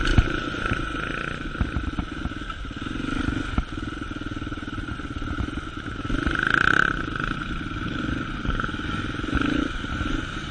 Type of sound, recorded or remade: recorded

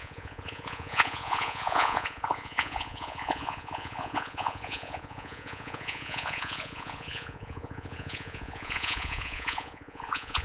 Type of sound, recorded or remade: remade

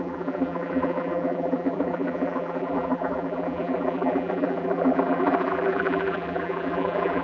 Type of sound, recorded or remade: remade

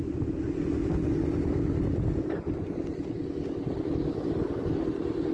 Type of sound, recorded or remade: recorded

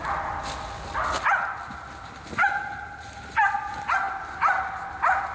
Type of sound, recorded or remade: recorded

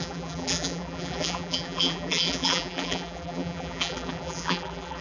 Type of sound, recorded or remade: remade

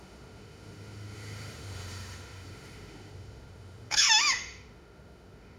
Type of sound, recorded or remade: remade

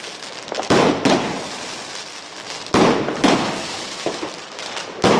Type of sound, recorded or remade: recorded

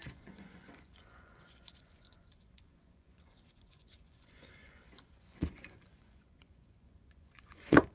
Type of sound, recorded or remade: remade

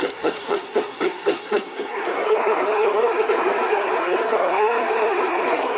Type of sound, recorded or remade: remade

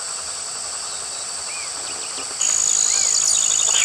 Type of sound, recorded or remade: recorded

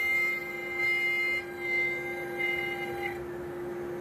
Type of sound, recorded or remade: recorded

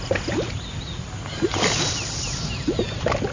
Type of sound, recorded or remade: recorded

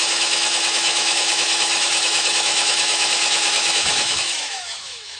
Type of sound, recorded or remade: remade